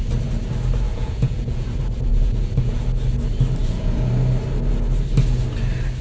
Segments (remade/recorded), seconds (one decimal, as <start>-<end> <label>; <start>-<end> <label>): 0.0-0.9 recorded; 0.9-1.7 remade; 1.7-2.1 recorded; 2.1-2.8 remade; 2.8-3.6 recorded; 3.6-4.1 remade; 4.1-6.0 recorded